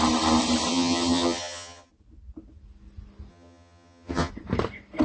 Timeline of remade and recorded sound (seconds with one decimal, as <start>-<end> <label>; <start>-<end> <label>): 0.0-0.7 recorded; 0.7-1.9 remade; 1.9-3.3 recorded; 3.3-4.3 remade; 4.3-5.0 recorded

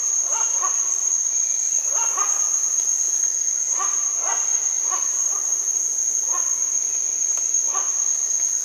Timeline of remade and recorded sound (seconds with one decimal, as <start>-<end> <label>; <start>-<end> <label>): 0.0-2.4 remade; 2.4-4.5 recorded; 4.5-5.6 remade; 5.6-7.1 recorded; 7.1-7.9 remade; 7.9-8.6 recorded

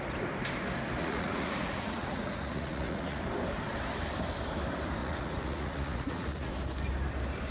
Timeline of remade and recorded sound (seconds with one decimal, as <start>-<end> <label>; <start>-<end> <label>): 0.0-1.0 recorded; 1.0-3.2 remade; 3.2-5.0 recorded; 5.0-6.5 remade; 6.5-7.5 recorded

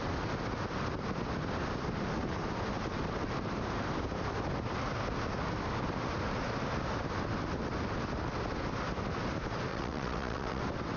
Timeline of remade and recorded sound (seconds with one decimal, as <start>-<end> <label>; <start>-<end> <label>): 0.0-9.7 recorded; 9.7-10.6 remade; 10.6-11.0 recorded

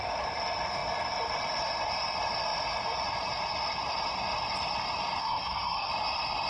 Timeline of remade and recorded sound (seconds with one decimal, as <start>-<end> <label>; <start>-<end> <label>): 0.0-5.2 recorded; 5.2-5.9 remade; 5.9-6.5 recorded

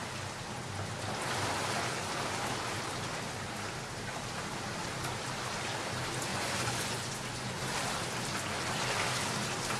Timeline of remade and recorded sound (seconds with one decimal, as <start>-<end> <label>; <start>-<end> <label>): 0.0-6.3 recorded; 6.3-7.6 remade; 7.6-9.8 recorded

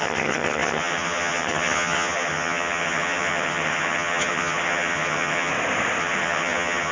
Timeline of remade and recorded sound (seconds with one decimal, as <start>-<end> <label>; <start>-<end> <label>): 0.0-5.5 remade; 5.5-6.0 recorded; 6.0-6.9 remade